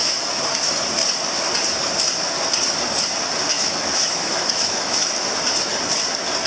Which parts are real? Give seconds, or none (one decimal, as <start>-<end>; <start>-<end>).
0.6-3.5; 5.1-6.5